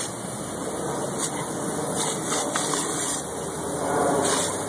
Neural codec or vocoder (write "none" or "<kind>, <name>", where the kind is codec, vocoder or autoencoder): none